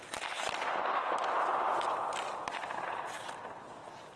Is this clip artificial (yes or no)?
no